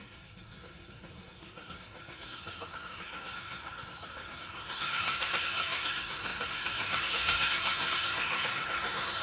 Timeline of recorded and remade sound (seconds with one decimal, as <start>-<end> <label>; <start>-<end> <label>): 0.0-9.2 remade